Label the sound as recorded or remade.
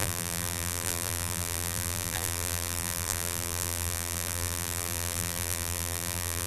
remade